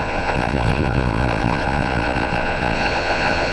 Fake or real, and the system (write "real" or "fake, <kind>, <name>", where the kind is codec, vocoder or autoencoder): fake, vocoder, Vocos